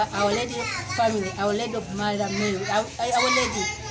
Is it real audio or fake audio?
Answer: real